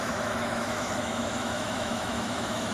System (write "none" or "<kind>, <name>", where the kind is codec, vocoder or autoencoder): autoencoder, DAC-VAE